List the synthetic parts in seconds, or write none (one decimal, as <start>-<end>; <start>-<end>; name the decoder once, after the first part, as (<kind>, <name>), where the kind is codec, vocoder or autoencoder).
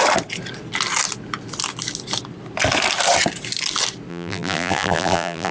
4.1-5.5 (vocoder, BigVGAN v2)